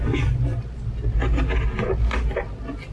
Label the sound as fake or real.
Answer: real